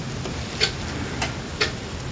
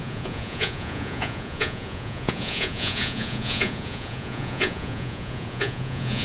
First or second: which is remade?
second